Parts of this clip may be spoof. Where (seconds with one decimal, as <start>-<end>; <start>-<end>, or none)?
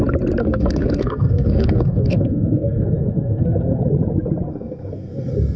0.4-3.8; 4.5-5.6